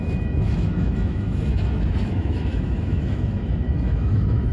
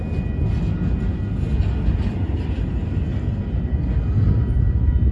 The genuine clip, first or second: second